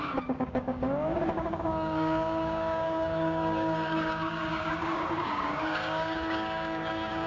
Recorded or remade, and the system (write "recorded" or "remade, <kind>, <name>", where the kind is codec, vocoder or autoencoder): remade, codec, DAC